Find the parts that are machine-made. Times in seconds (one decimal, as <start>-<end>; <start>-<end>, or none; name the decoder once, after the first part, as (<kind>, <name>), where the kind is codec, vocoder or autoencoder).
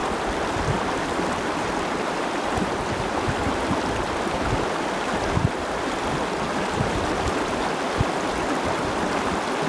0.0-2.8 (vocoder, BigVGAN v2)